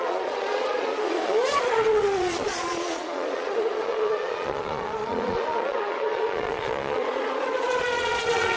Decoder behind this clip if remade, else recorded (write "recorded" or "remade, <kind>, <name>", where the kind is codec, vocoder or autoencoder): remade, vocoder, Vocos